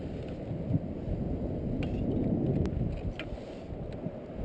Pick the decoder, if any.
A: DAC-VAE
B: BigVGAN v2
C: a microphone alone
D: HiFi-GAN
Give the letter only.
C